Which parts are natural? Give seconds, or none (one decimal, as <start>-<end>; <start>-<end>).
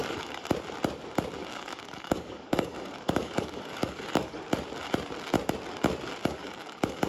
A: 0.5-1.4; 4.4-6.2